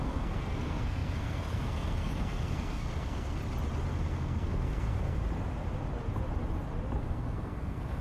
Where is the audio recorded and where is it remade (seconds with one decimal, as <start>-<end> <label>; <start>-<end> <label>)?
0.0-3.4 remade; 3.4-3.9 recorded; 3.9-5.2 remade; 5.2-7.0 recorded; 7.0-8.0 remade

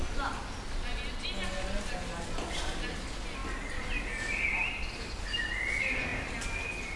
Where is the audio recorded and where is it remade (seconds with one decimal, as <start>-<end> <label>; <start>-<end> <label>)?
0.0-7.0 recorded

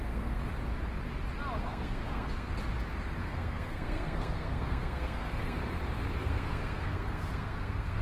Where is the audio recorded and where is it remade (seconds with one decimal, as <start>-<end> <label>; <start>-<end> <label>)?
0.0-0.4 remade; 0.4-1.6 recorded; 1.6-2.5 remade; 2.5-3.2 recorded; 3.2-5.6 remade; 5.6-6.2 recorded; 6.2-8.0 remade

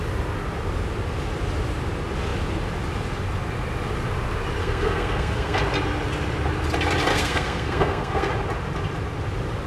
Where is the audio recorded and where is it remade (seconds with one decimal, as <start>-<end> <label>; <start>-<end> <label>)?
0.0-4.6 recorded; 4.6-5.6 remade; 5.6-7.1 recorded; 7.1-8.3 remade; 8.3-9.7 recorded

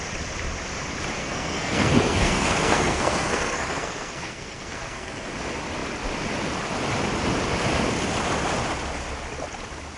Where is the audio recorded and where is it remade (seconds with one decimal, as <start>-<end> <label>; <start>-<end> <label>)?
0.0-1.2 recorded; 1.2-5.3 remade; 5.3-10.0 recorded

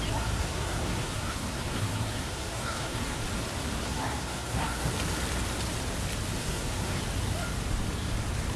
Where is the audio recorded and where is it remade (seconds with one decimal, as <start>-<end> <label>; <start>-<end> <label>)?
0.0-0.4 recorded; 0.4-3.2 remade; 3.2-3.8 recorded; 3.8-4.9 remade; 4.9-6.4 recorded; 6.4-7.0 remade; 7.0-8.6 recorded

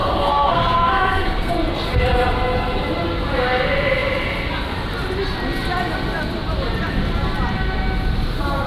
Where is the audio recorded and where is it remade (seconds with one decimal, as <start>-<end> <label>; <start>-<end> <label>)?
0.0-1.5 remade; 1.5-8.7 recorded